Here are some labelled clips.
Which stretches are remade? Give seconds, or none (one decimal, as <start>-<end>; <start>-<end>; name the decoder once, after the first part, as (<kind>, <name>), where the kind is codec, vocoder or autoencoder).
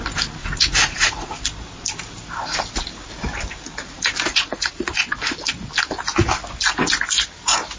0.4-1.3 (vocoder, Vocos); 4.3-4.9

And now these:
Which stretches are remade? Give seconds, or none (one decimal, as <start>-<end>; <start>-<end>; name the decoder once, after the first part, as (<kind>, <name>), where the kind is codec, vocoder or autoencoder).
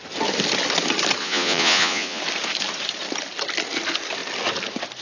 1.2-2.2 (vocoder, Vocos)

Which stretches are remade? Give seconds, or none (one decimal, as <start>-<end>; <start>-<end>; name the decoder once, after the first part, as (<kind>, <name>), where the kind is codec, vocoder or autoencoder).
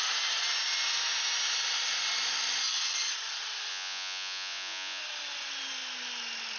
3.7-5.0 (vocoder, Vocos)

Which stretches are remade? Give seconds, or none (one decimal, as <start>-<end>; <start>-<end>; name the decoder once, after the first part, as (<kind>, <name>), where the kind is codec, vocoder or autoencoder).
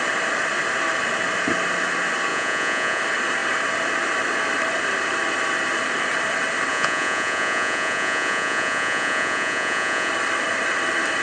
2.3-3.0 (vocoder, Vocos); 6.7-10.1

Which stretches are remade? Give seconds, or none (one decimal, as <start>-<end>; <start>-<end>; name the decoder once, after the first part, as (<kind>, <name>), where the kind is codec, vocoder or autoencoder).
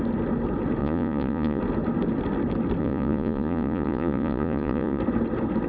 0.8-1.6 (vocoder, Vocos); 2.8-5.0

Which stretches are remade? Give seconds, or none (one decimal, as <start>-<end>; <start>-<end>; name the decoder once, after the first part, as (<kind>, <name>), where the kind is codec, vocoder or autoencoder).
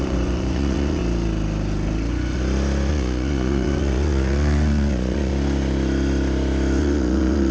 0.0-1.0 (vocoder, Vocos); 2.9-5.3; 6.8-7.5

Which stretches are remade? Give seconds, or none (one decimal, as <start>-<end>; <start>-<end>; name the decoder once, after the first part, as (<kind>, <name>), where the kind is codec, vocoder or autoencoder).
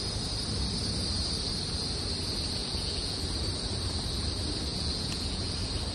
2.6-3.2 (vocoder, Vocos); 4.7-5.5